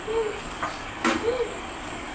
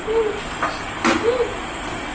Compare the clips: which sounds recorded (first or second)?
second